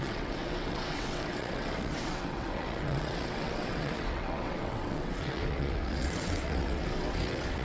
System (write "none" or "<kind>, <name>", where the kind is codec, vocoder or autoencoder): vocoder, WaveNeXt